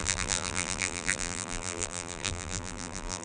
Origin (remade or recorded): remade